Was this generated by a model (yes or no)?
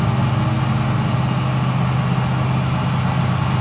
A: no